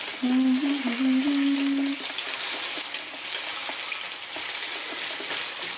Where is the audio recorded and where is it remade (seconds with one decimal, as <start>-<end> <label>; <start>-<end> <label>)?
0.0-5.8 recorded